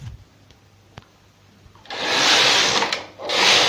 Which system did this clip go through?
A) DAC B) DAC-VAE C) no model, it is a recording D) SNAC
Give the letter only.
C